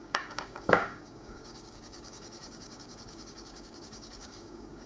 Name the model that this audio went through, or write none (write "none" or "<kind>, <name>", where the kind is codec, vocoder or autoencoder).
codec, DAC